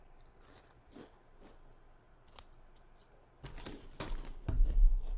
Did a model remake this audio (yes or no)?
no